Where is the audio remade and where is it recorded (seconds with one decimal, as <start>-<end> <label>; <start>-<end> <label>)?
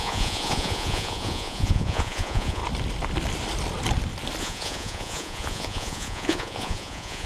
0.0-2.6 remade; 2.6-4.4 recorded; 4.4-7.3 remade